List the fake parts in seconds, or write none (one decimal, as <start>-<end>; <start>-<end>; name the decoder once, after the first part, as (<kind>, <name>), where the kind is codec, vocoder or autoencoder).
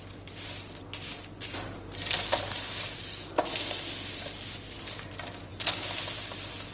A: none